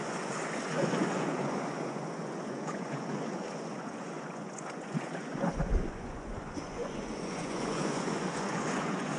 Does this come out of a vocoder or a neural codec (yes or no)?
yes